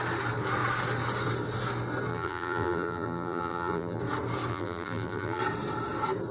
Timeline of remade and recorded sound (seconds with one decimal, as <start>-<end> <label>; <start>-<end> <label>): 0.0-2.1 recorded; 2.1-4.0 remade; 4.0-4.5 recorded; 4.5-5.4 remade; 5.4-6.3 recorded